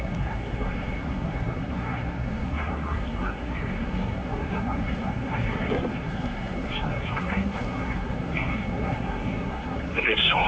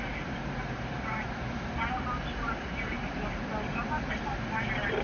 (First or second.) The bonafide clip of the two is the second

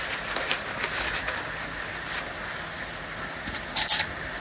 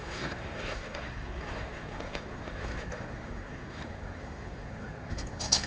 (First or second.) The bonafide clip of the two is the first